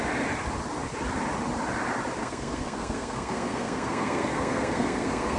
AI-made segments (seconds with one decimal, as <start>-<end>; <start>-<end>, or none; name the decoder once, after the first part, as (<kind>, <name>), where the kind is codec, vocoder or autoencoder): 2.2-5.4 (codec, SNAC)

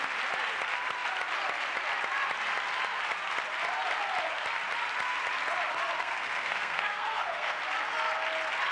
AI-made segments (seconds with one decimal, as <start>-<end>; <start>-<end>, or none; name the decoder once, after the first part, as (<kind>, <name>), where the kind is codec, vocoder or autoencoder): 6.0-7.6 (codec, SNAC)

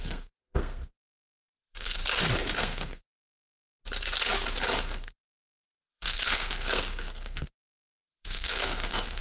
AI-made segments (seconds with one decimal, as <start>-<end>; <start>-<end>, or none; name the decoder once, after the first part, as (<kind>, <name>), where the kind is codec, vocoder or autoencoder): 0.0-2.0 (codec, SNAC); 2.6-3.2; 4.8-9.2

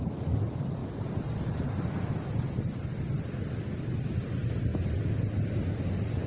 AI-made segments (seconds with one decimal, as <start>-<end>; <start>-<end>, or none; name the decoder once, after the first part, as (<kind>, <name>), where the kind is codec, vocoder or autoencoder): none

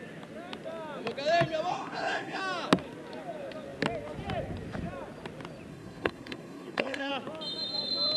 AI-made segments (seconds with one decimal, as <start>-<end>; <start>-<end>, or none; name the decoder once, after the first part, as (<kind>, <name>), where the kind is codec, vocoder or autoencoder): 1.7-2.4 (codec, SNAC); 5.7-7.1

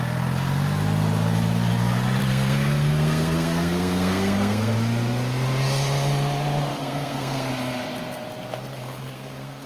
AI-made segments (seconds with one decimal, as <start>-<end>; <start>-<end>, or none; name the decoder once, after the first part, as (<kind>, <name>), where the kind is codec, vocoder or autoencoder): 2.2-4.7 (codec, SNAC); 6.7-7.5; 9.0-9.7